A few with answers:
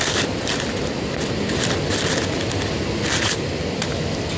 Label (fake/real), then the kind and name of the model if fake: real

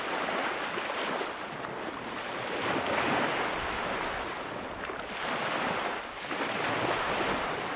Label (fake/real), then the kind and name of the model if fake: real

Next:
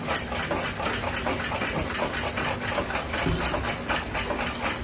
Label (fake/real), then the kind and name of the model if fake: real